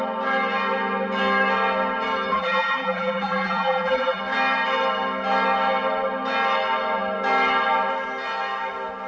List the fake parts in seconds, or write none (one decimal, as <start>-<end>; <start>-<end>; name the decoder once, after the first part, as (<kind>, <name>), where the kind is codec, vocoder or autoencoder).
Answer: 2.3-4.2 (vocoder, BigVGAN v2)